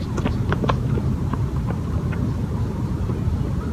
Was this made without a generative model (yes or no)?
no